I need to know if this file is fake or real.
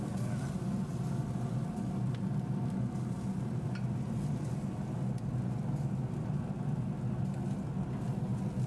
real